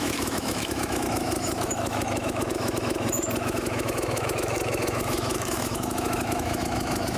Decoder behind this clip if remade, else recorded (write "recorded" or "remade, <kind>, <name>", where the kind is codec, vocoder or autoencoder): remade, autoencoder, DAC-VAE